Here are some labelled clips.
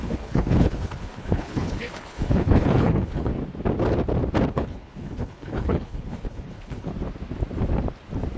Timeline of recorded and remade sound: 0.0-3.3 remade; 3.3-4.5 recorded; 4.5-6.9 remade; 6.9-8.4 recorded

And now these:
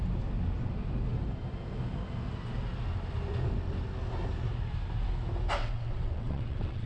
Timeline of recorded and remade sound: 0.0-5.6 recorded; 5.6-6.9 remade

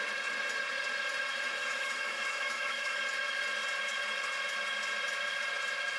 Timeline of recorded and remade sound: 0.0-1.6 recorded; 1.6-3.0 remade; 3.0-6.0 recorded

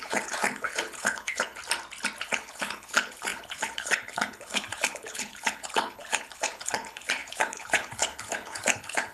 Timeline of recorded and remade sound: 0.0-1.6 remade; 1.6-2.2 recorded; 2.2-9.1 remade

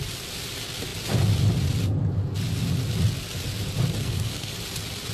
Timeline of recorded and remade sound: 0.0-4.0 recorded; 4.0-4.5 remade; 4.5-5.1 recorded

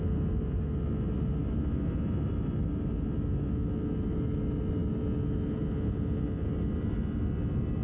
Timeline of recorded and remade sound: 0.0-7.8 recorded